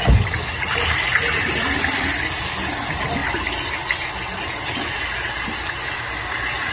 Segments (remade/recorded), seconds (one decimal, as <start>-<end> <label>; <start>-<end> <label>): 0.0-6.7 recorded